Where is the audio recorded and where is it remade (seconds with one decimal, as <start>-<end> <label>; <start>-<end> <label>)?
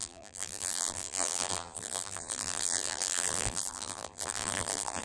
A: 0.0-5.0 remade